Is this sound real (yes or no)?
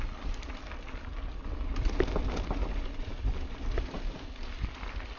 yes